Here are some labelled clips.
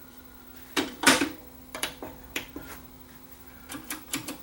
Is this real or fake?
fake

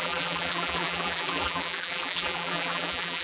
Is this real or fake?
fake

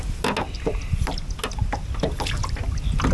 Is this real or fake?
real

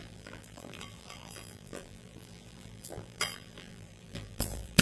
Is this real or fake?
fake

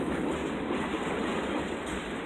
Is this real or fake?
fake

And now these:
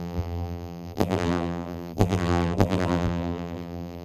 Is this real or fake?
fake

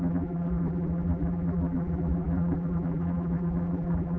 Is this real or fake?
fake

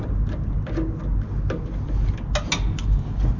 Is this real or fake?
real